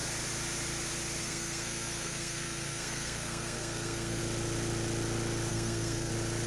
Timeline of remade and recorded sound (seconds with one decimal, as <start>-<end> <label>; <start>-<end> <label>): 0.0-1.2 recorded; 1.2-4.2 remade; 4.2-5.5 recorded; 5.5-6.1 remade; 6.1-6.5 recorded